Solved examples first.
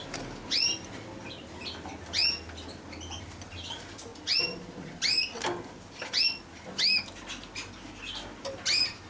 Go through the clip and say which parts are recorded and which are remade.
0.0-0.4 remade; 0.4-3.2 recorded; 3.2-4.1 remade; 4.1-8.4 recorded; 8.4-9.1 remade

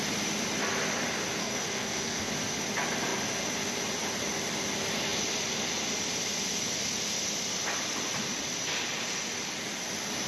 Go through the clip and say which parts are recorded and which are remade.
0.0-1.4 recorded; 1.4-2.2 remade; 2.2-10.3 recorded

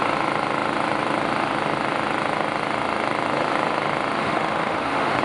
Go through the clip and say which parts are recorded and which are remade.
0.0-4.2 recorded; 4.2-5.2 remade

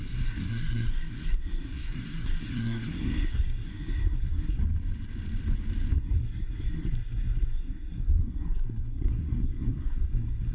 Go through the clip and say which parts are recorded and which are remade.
0.0-4.6 remade; 4.6-5.9 recorded; 5.9-10.5 remade

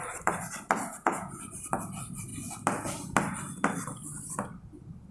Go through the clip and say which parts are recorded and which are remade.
0.0-0.9 recorded; 0.9-1.4 remade; 1.4-5.1 recorded

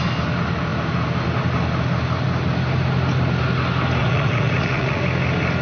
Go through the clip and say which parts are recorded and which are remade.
0.0-4.0 recorded; 4.0-5.0 remade; 5.0-5.6 recorded

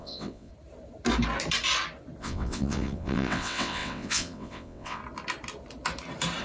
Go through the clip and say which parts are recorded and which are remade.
0.0-0.5 remade; 0.5-2.2 recorded; 2.2-5.0 remade; 5.0-6.4 recorded

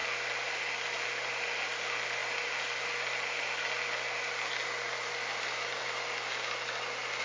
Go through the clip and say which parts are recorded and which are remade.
0.0-7.2 recorded